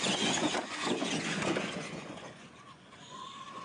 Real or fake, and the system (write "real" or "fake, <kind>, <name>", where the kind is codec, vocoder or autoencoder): fake, vocoder, Vocos